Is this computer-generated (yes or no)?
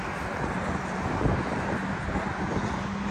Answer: no